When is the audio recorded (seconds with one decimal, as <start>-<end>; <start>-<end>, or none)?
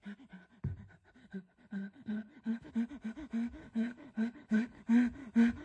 0.0-1.2; 2.7-3.6; 4.8-5.6